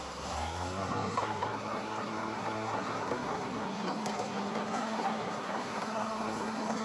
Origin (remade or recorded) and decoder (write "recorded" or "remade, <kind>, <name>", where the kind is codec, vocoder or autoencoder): remade, codec, SNAC